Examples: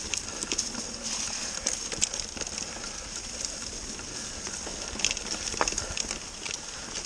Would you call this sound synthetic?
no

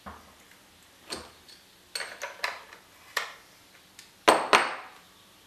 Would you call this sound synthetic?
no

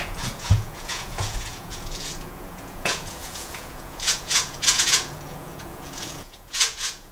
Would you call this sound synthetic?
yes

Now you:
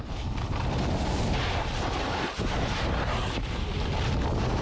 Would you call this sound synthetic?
no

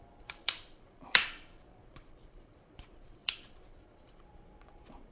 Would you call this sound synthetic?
yes